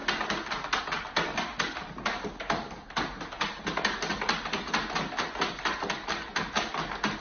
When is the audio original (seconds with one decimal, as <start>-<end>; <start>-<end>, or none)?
0.0-7.2